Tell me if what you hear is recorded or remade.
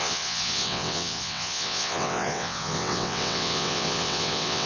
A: remade